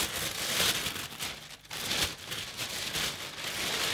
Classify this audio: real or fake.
real